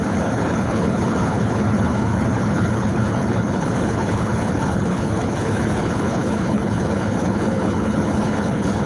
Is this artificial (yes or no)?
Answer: yes